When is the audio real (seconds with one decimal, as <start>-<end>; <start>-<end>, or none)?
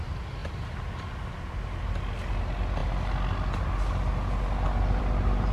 0.0-5.5